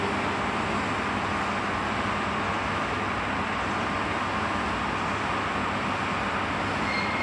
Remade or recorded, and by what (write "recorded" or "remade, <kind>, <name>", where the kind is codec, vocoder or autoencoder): recorded